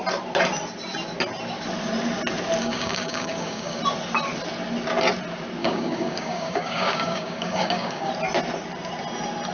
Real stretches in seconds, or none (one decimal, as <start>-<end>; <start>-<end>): 0.0-2.6; 3.8-5.6; 8.1-9.5